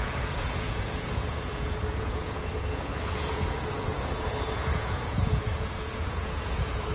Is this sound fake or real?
fake